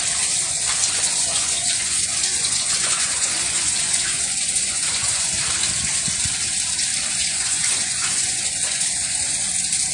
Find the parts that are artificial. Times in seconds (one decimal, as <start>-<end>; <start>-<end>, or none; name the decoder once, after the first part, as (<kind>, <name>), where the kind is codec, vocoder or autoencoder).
0.8-5.4 (vocoder, Vocos); 7.2-9.5